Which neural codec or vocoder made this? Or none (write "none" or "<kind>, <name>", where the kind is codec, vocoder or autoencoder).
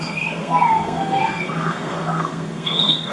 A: codec, SNAC